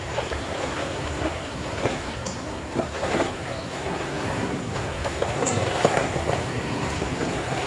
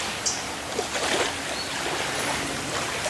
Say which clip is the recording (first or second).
second